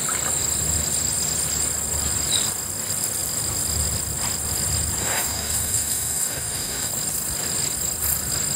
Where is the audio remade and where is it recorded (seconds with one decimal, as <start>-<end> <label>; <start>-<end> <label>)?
0.0-5.0 recorded; 5.0-6.9 remade; 6.9-8.6 recorded